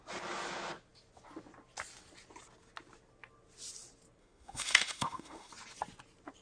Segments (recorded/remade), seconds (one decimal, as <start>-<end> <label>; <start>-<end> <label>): 0.0-4.2 recorded; 4.2-5.5 remade; 5.5-6.4 recorded